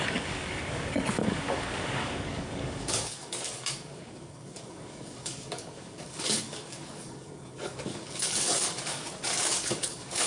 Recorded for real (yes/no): no